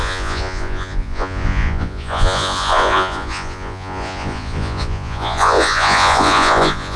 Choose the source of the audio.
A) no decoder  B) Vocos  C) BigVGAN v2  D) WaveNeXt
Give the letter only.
B